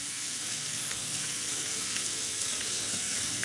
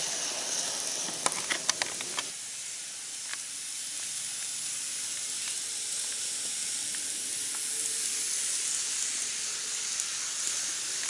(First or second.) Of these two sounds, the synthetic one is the first